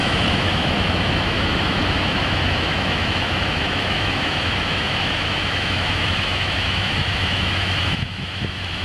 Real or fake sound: fake